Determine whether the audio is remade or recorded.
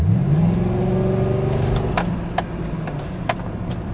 recorded